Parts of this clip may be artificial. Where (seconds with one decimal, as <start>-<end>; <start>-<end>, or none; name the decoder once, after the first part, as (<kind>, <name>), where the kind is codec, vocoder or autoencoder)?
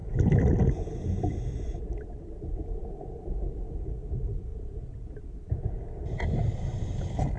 0.0-1.4 (vocoder, BigVGAN v2); 2.6-3.1; 4.5-5.0